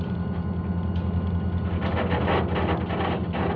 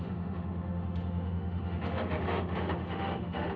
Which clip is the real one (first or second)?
first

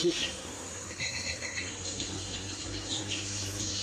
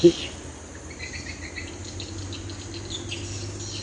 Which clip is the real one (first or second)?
second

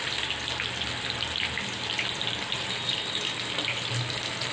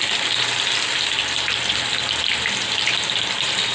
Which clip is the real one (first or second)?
first